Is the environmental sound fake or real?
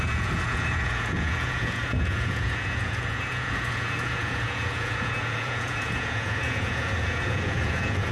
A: fake